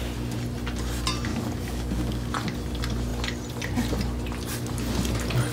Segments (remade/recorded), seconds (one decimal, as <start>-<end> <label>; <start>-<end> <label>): 0.0-1.3 recorded; 1.3-2.3 remade; 2.3-5.5 recorded